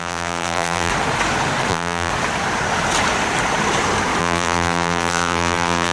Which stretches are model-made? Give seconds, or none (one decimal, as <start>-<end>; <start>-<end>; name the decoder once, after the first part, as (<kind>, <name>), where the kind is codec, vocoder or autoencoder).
0.0-0.9 (vocoder, BigVGAN v2); 1.7-2.1; 4.2-5.9